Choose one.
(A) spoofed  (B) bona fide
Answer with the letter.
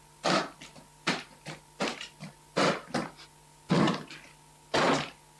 B